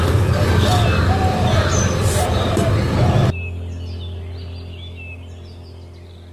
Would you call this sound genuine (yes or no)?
yes